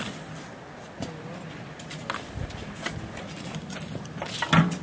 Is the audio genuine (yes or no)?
yes